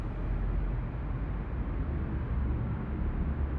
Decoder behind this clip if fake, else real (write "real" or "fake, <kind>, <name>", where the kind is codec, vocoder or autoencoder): real